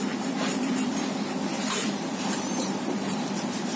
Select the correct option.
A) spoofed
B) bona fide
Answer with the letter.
A